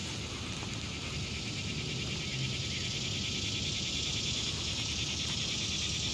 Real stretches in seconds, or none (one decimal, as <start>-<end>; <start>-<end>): 0.0-6.1